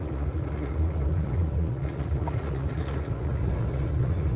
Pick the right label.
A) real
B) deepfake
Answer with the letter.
B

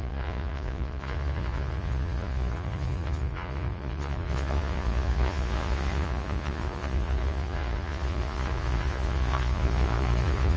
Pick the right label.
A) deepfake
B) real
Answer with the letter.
A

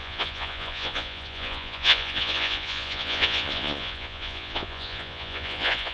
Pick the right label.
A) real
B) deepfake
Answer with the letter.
B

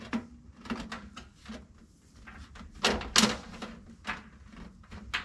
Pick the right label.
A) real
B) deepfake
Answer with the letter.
A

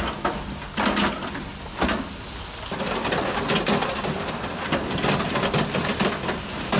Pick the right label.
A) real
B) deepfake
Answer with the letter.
A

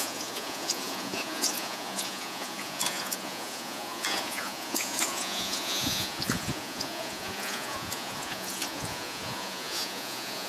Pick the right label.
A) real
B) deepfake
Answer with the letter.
B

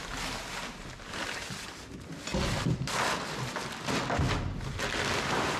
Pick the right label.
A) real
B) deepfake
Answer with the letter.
A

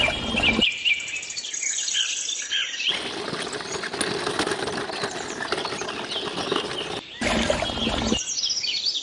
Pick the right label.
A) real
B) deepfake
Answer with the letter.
A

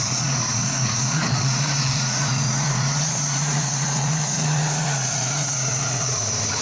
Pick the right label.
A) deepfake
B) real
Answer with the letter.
A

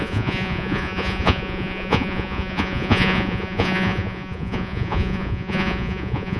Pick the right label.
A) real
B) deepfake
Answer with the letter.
B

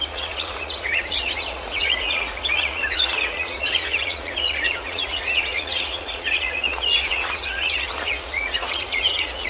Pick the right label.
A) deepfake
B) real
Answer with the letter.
A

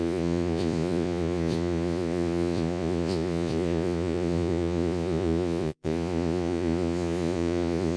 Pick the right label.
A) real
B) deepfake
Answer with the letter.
B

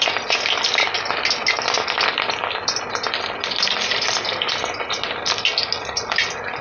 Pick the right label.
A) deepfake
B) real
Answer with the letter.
B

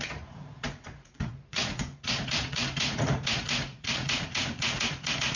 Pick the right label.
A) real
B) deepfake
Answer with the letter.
B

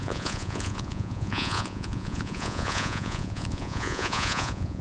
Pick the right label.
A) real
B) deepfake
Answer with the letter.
B